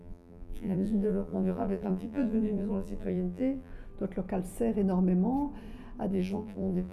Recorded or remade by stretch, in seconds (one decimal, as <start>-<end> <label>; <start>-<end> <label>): 0.0-3.7 remade; 3.7-6.1 recorded; 6.1-6.9 remade